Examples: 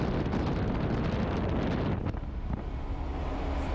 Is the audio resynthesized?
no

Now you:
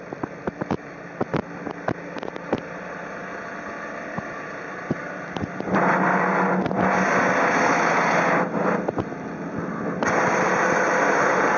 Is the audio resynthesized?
no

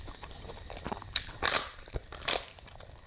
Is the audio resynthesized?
yes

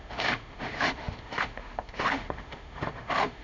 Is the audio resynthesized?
yes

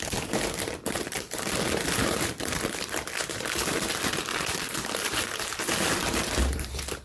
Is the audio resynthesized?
yes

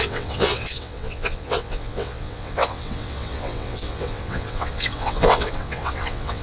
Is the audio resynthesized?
yes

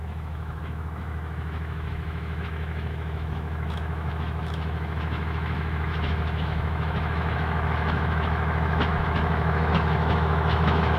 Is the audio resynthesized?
yes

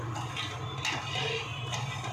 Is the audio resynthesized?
no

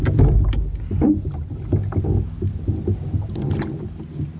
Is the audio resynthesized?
no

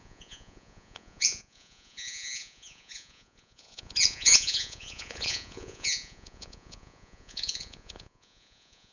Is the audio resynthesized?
yes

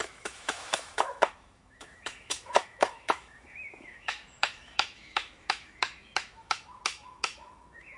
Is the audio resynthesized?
yes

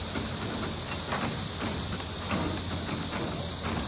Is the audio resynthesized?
no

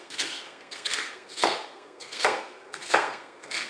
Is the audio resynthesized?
yes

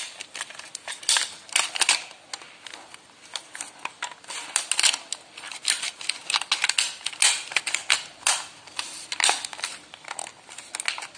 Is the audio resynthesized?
no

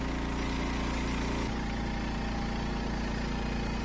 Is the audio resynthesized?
no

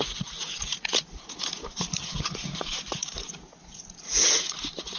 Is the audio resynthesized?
yes